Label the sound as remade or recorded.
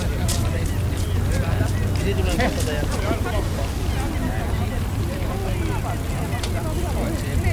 recorded